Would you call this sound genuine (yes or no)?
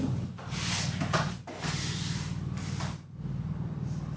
yes